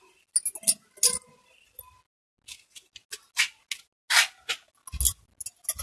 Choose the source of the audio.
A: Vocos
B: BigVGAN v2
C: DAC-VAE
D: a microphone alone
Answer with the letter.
D